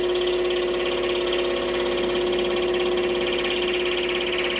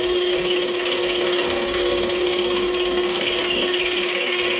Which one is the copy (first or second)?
second